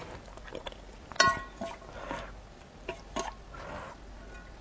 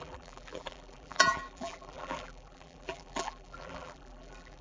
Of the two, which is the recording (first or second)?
first